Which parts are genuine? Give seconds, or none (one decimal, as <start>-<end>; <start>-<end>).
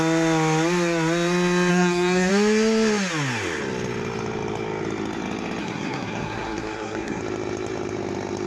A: 0.0-1.7; 2.3-5.6; 7.2-8.5